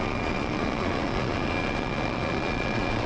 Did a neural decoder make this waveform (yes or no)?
yes